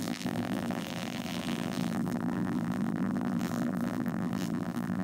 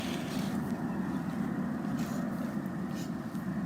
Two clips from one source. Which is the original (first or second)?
second